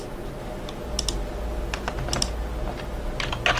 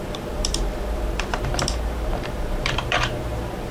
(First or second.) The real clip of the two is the first